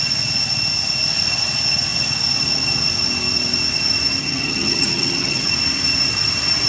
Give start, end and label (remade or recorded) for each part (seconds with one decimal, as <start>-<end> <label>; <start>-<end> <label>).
0.0-4.2 recorded; 4.2-5.5 remade; 5.5-6.7 recorded